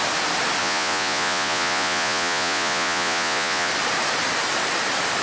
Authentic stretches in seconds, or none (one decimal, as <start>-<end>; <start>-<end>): 0.0-0.6; 3.7-5.2